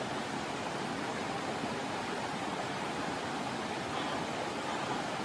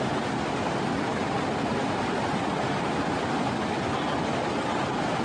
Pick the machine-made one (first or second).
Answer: first